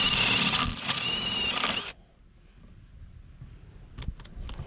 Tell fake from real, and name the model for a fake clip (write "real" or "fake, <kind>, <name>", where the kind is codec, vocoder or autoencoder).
real